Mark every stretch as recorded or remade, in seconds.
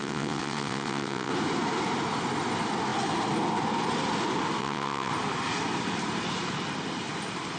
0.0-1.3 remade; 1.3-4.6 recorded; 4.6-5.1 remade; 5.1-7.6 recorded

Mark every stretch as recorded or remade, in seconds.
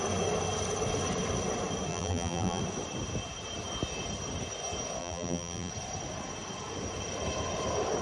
0.0-1.9 recorded; 1.9-2.6 remade; 2.6-5.0 recorded; 5.0-5.7 remade; 5.7-8.0 recorded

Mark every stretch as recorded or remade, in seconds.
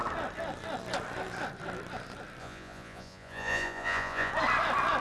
0.0-2.4 recorded; 2.4-4.3 remade; 4.3-5.0 recorded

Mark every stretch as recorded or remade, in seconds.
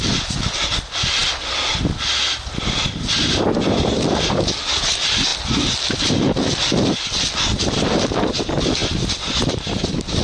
0.0-10.2 recorded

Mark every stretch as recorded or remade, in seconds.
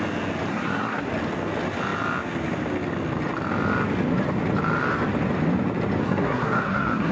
0.0-0.5 recorded; 0.5-1.1 remade; 1.1-6.0 recorded; 6.0-7.1 remade